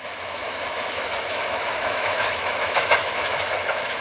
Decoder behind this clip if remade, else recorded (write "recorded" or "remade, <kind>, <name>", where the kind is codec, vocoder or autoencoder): remade, autoencoder, DAC-VAE